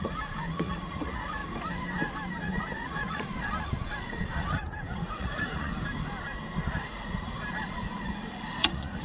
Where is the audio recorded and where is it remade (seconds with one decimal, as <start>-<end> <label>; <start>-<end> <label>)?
0.0-1.4 remade; 1.4-2.4 recorded; 2.4-5.7 remade; 5.7-6.9 recorded; 6.9-9.0 remade

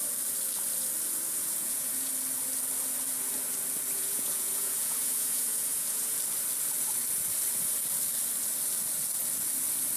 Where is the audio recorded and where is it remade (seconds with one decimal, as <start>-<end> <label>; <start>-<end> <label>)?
0.0-1.3 recorded; 1.3-2.1 remade; 2.1-4.0 recorded; 4.0-6.1 remade; 6.1-10.0 recorded

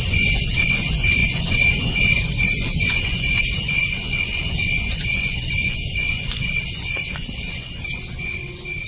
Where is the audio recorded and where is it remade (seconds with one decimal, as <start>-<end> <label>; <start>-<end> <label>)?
0.0-8.9 remade

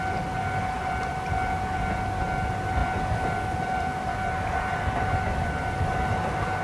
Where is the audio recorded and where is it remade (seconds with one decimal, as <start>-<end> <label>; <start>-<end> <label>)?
0.0-6.6 recorded

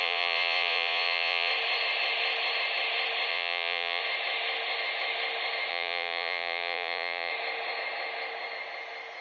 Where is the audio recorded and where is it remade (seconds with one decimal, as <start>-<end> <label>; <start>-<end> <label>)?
0.0-1.5 remade; 1.5-3.3 recorded; 3.3-4.0 remade; 4.0-5.7 recorded; 5.7-7.3 remade; 7.3-9.2 recorded